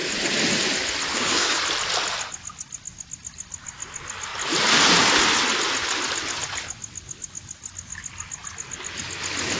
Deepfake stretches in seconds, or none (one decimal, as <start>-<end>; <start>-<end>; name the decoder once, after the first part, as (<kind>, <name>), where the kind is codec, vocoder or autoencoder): 1.1-1.6 (codec, DAC)